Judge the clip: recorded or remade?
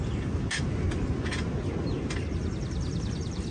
recorded